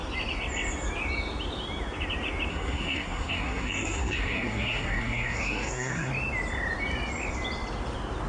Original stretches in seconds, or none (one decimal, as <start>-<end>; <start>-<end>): 0.0-2.5; 6.1-8.3